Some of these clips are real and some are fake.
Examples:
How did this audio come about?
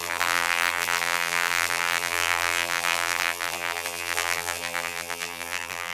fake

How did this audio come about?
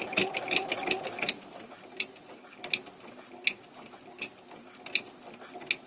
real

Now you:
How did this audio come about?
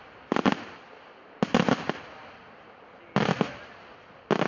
real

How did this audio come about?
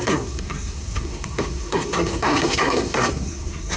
fake